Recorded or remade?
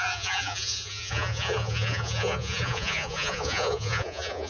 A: remade